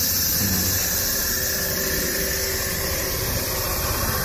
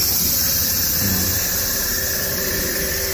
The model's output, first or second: second